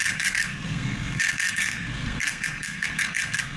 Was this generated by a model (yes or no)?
yes